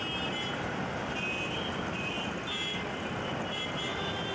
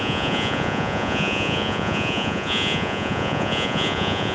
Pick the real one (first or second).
first